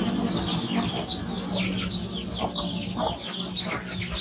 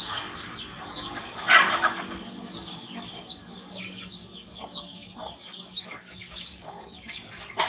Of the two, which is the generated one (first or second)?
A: second